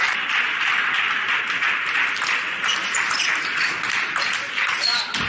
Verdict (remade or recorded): recorded